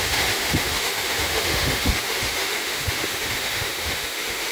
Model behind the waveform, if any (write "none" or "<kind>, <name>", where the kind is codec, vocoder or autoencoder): autoencoder, DAC-VAE